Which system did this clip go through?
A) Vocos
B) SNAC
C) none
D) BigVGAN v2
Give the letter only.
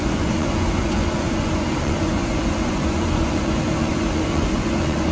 A